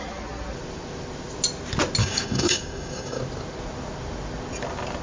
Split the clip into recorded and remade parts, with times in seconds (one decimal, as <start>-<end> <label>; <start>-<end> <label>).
0.0-2.0 recorded; 2.0-3.2 remade; 3.2-5.0 recorded